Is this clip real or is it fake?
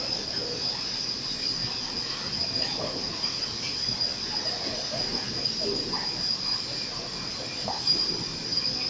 real